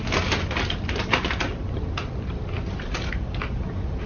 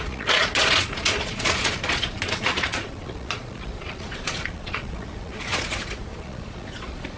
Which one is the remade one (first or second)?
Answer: second